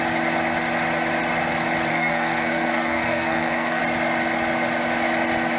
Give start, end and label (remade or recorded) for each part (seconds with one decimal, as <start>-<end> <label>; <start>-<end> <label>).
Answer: 0.0-1.9 recorded; 1.9-3.8 remade; 3.8-5.6 recorded